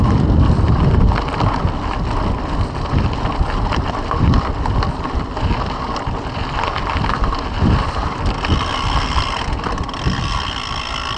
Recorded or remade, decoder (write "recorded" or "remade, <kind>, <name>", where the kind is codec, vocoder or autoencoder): recorded